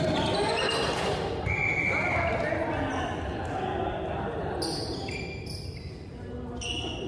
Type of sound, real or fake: real